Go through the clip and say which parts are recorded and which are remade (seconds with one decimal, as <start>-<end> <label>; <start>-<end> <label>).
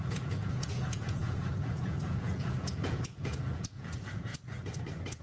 0.0-4.3 remade; 4.3-5.2 recorded